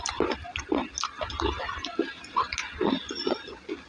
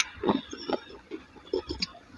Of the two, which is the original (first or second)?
first